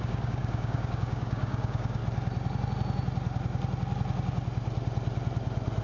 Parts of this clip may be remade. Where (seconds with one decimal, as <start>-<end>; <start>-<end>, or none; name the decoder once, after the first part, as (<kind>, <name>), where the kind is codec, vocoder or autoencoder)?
0.0-2.0 (codec, DAC)